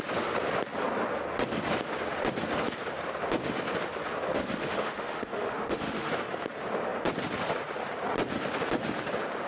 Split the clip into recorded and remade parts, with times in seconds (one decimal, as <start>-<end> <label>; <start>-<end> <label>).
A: 0.0-4.3 recorded; 4.3-6.1 remade; 6.1-9.5 recorded

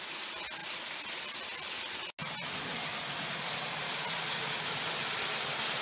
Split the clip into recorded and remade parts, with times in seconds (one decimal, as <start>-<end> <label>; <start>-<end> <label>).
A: 0.0-5.8 recorded

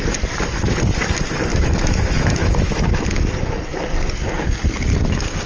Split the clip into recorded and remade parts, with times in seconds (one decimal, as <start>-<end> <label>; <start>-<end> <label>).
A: 0.0-1.5 recorded; 1.5-3.2 remade; 3.2-5.5 recorded

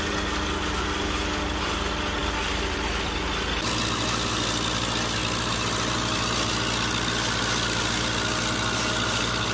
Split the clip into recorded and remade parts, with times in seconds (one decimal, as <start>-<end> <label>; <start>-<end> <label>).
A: 0.0-9.5 recorded